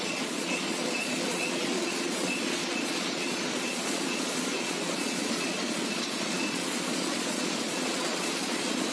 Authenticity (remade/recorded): remade